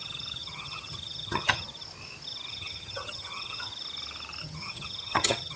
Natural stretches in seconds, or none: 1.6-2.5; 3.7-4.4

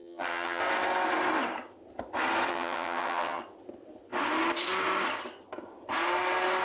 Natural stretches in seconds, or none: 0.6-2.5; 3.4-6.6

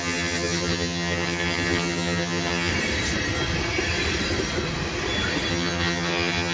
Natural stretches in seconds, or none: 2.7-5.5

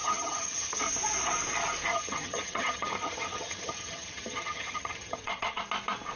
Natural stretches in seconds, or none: 0.8-1.9; 5.6-6.2

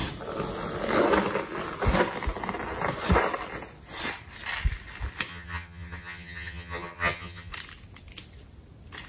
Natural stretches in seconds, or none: 0.0-5.3; 7.5-9.1

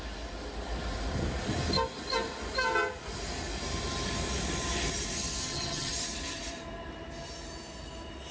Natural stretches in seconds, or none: 0.0-5.4; 5.9-8.3

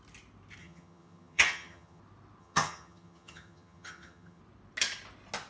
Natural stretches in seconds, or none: 0.0-0.6; 2.0-2.4; 4.4-5.5